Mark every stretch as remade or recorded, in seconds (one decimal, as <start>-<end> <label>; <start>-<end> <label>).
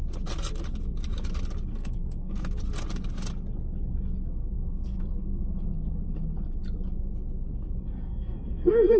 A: 0.0-1.7 recorded; 1.7-2.6 remade; 2.6-4.4 recorded; 4.4-5.0 remade; 5.0-8.1 recorded; 8.1-9.0 remade